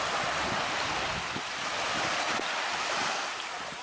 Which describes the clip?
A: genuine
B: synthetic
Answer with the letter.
A